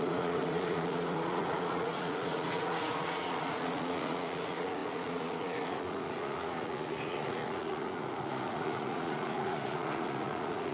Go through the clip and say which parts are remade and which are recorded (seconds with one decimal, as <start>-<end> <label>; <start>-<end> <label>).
0.0-10.7 remade

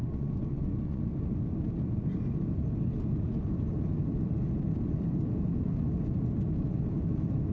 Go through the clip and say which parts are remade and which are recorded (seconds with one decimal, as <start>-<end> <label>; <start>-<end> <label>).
0.0-1.0 remade; 1.0-7.5 recorded

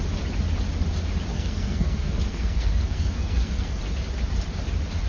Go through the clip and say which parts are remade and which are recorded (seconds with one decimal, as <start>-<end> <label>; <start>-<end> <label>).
0.0-1.3 recorded; 1.3-3.8 remade; 3.8-5.1 recorded

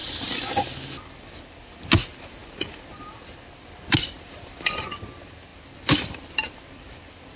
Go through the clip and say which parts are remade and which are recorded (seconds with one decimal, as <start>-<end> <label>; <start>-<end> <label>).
0.0-1.8 remade; 1.8-5.5 recorded; 5.5-7.4 remade

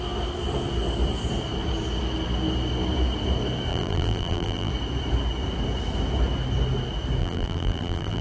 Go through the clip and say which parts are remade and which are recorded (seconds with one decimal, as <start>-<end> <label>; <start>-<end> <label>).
0.0-3.7 recorded; 3.7-4.7 remade; 4.7-7.2 recorded; 7.2-8.2 remade

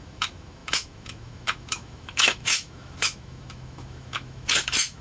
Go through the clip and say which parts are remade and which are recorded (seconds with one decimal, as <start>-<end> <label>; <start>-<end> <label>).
0.0-5.0 remade